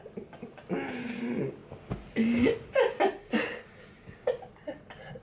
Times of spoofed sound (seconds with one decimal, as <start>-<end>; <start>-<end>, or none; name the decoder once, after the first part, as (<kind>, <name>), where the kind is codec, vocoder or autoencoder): none